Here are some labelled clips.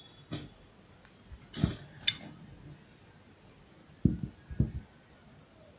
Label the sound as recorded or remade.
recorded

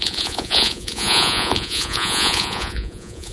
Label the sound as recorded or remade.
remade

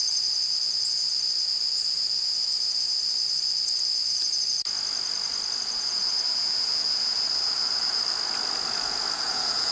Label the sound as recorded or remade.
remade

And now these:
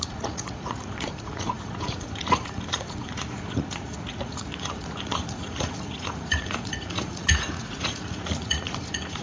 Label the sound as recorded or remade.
remade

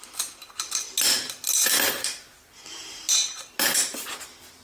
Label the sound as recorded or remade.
recorded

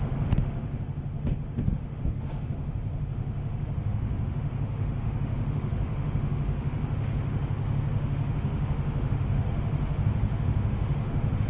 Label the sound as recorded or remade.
remade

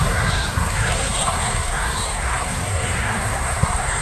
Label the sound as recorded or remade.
remade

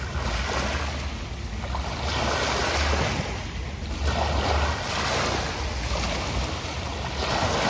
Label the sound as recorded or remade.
recorded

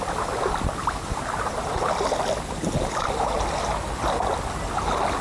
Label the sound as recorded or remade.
recorded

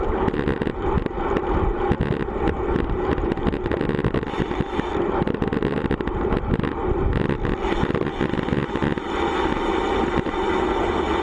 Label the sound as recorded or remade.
recorded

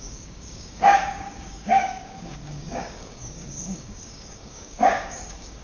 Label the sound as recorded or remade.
remade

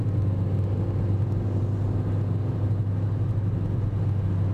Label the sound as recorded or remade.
recorded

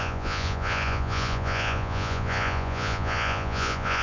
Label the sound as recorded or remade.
remade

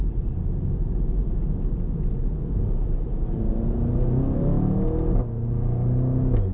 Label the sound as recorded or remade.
recorded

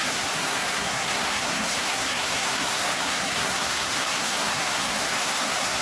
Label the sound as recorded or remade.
remade